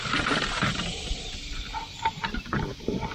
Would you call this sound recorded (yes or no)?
yes